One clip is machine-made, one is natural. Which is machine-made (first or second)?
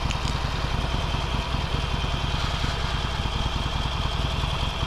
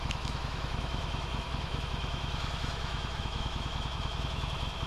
second